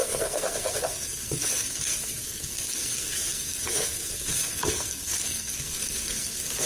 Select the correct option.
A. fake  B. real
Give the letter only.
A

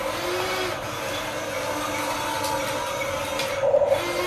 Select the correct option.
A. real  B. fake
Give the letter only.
A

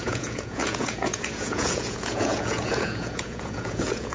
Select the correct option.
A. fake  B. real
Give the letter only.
A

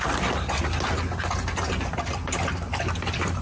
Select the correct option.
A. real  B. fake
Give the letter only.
A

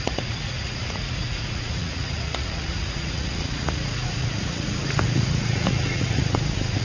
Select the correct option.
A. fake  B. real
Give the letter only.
A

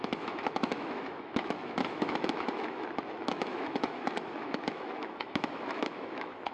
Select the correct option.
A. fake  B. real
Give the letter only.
A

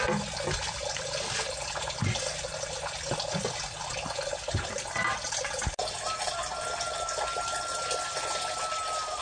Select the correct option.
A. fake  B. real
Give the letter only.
B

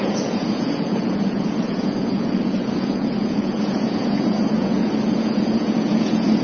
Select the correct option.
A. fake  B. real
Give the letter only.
A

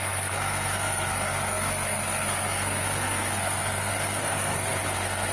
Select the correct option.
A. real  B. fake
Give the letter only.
B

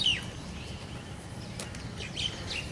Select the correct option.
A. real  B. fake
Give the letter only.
A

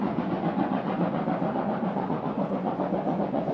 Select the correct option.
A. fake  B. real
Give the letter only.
A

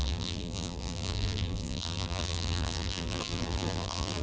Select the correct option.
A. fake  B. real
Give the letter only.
A